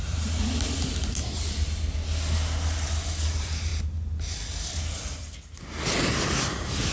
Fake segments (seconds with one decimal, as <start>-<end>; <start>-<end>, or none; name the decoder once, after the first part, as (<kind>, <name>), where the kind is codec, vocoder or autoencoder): none